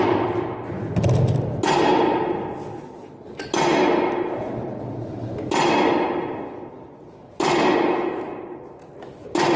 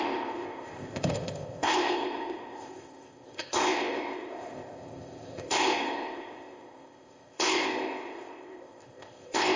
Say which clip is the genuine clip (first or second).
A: first